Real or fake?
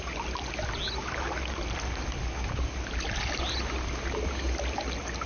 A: real